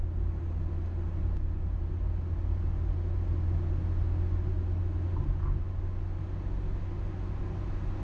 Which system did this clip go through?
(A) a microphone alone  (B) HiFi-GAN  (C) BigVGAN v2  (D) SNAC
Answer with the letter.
A